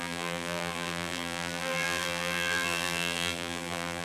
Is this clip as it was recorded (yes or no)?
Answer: no